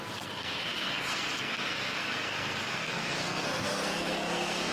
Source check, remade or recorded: remade